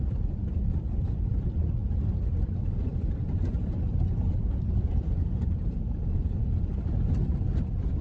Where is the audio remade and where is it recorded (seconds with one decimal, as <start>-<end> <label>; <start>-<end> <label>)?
0.0-1.8 remade; 1.8-2.4 recorded; 2.4-8.0 remade